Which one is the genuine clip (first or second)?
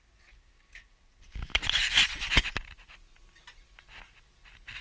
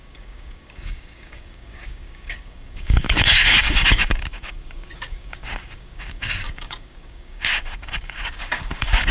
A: first